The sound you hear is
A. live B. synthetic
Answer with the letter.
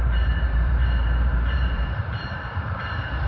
B